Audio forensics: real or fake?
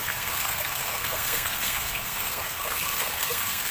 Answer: fake